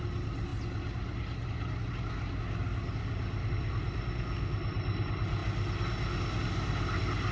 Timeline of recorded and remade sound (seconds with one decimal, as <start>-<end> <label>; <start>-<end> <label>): 0.0-7.3 recorded